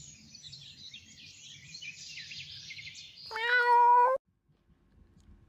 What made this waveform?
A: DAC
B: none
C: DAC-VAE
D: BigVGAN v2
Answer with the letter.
B